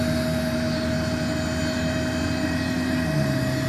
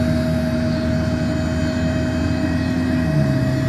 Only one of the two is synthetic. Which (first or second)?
first